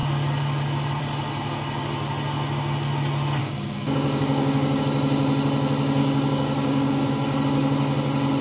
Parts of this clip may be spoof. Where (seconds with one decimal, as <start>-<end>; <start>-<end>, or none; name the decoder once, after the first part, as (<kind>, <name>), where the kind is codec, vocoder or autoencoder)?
3.4-4.8 (codec, DAC); 6.0-7.4